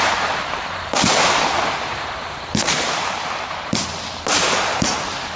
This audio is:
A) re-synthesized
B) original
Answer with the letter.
A